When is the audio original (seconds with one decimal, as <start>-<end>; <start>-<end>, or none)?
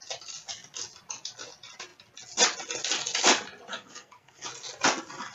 0.0-3.7; 4.5-5.3